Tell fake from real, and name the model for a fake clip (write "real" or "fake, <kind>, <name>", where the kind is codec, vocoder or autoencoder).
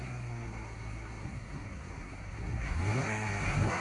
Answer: fake, codec, SNAC